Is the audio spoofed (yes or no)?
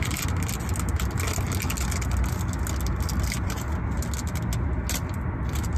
no